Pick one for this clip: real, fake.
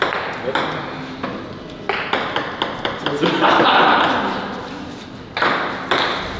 real